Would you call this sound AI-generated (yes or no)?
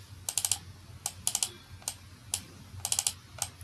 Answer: no